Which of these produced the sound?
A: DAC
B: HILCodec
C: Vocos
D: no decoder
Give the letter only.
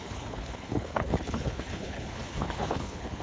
B